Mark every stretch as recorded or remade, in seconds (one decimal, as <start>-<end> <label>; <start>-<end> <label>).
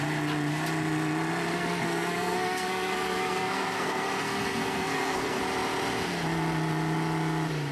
0.0-1.5 recorded; 1.5-5.4 remade; 5.4-7.7 recorded